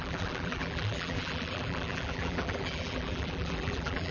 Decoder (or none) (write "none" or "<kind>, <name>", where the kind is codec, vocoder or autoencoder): vocoder, BigVGAN v2